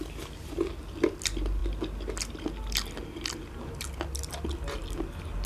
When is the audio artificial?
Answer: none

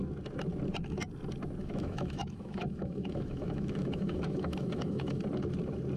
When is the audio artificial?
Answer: 1.6-5.2 (autoencoder, DAC-VAE)